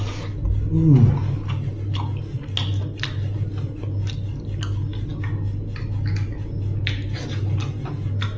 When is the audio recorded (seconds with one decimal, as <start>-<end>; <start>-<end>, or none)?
0.0-8.4

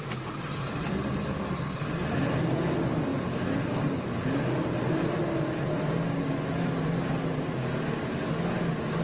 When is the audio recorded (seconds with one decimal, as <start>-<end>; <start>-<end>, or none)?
0.0-9.0

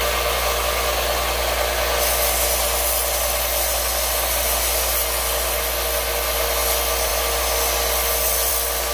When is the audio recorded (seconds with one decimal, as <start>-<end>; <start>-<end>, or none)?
0.0-8.9

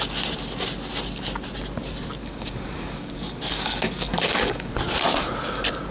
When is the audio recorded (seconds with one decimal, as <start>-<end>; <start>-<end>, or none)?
0.0-2.2; 4.7-5.9